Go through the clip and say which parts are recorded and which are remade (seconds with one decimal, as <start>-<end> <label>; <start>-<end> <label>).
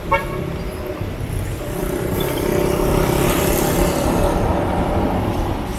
0.0-1.8 recorded; 1.8-5.3 remade; 5.3-5.8 recorded